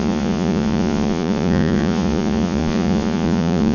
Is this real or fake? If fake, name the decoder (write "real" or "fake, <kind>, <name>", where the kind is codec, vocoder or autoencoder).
fake, vocoder, Vocos